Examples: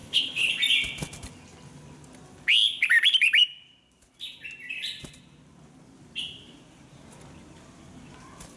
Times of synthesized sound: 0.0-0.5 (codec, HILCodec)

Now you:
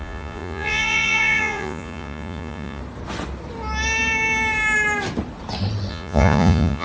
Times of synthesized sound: 0.0-2.8 (vocoder, Vocos); 5.9-6.8

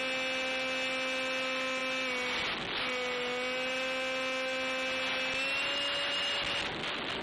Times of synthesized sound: none

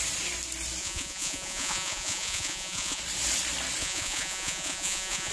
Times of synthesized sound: 0.8-3.0 (vocoder, Vocos); 3.8-5.3

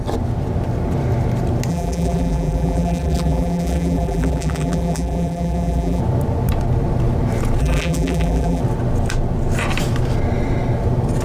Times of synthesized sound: 1.7-6.0 (vocoder, BigVGAN v2); 7.6-8.6

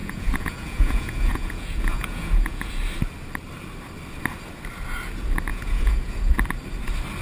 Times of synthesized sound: 0.0-2.7 (vocoder, Vocos); 5.5-6.3